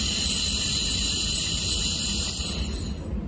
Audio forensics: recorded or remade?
recorded